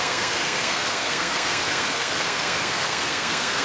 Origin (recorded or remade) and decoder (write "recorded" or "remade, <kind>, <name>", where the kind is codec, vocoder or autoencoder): remade, codec, SNAC